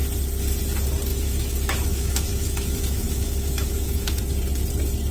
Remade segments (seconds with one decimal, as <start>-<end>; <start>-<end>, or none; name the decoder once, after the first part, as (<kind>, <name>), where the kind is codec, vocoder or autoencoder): 1.1-4.2 (autoencoder, DAC-VAE)